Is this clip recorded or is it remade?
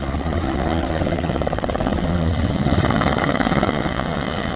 remade